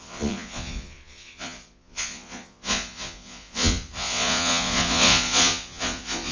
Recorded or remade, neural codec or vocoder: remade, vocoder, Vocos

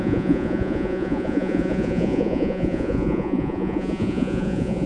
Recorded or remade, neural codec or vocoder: remade, vocoder, Vocos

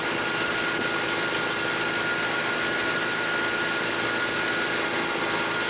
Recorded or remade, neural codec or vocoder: recorded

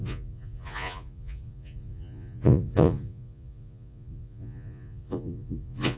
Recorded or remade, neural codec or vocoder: remade, vocoder, Vocos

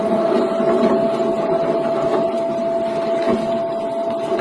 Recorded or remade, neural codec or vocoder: recorded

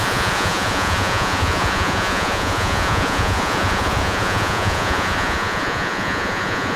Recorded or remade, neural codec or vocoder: remade, vocoder, Vocos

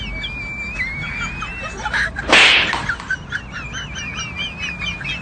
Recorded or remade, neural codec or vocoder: recorded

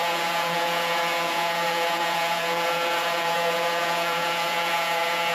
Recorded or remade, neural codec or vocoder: remade, vocoder, Vocos